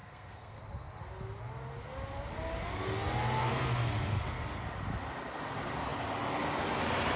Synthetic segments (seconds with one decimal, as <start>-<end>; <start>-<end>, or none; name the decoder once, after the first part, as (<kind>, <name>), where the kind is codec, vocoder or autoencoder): 0.0-0.6 (codec, SNAC); 3.4-4.6